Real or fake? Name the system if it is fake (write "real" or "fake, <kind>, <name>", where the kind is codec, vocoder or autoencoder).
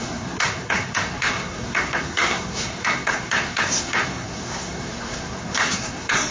fake, codec, SNAC